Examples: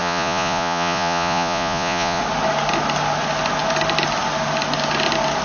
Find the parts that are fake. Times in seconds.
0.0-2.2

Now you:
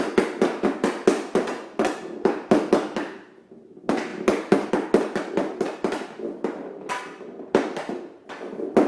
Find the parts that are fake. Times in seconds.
4.1-4.7

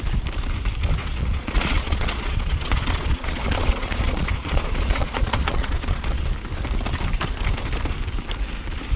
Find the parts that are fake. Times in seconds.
1.0-6.2

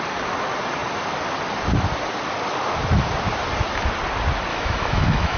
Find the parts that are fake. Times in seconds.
4.5-5.4

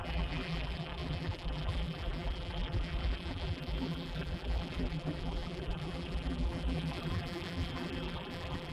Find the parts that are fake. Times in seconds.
0.0-8.7

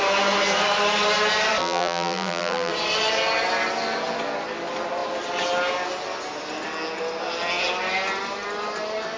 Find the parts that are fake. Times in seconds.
1.6-2.7

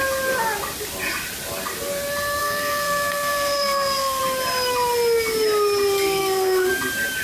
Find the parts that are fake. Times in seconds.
2.4-4.2; 6.2-6.7

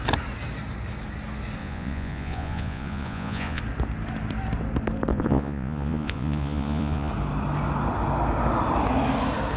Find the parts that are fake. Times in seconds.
1.6-3.6; 5.1-7.1